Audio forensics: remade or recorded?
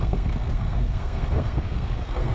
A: remade